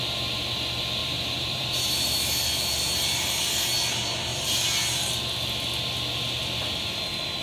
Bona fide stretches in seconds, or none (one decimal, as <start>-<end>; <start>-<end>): 0.0-1.0; 3.4-4.3; 5.1-7.4